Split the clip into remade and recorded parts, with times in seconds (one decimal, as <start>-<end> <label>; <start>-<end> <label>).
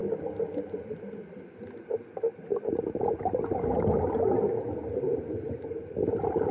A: 0.0-6.5 recorded